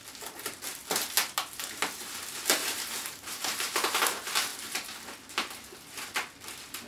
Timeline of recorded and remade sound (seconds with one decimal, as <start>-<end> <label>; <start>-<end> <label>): 0.0-2.6 recorded; 2.6-4.0 remade; 4.0-4.5 recorded; 4.5-5.3 remade; 5.3-6.9 recorded